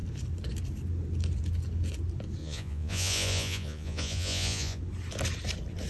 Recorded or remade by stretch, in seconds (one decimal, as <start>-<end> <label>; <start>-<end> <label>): 0.0-2.4 recorded; 2.4-4.8 remade; 4.8-5.9 recorded